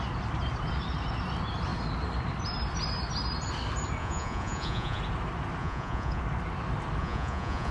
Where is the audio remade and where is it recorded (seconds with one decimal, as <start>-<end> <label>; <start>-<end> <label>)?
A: 0.0-4.0 recorded; 4.0-5.0 remade; 5.0-5.6 recorded; 5.6-6.2 remade; 6.2-7.0 recorded; 7.0-7.7 remade